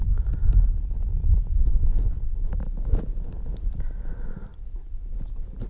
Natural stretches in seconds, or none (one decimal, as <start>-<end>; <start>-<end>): 0.0-1.2; 1.7-5.7